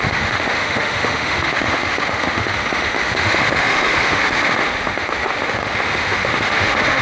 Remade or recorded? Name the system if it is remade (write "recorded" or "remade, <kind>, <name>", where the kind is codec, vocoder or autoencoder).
remade, autoencoder, DAC-VAE